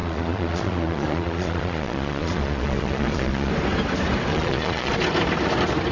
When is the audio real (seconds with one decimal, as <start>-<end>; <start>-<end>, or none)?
3.5-4.3; 4.9-5.9